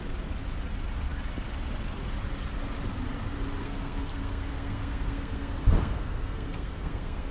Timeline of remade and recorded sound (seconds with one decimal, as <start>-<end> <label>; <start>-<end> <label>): 0.0-3.6 recorded; 3.6-7.3 remade